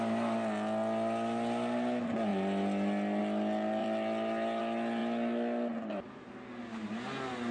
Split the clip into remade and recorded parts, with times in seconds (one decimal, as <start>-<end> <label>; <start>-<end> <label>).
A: 0.0-3.8 recorded; 3.8-4.6 remade; 4.6-7.5 recorded